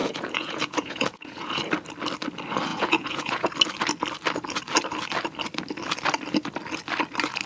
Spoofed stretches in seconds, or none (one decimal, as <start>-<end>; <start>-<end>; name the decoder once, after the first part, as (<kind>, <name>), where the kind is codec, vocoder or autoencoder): 0.0-1.6 (vocoder, Vocos); 2.7-3.5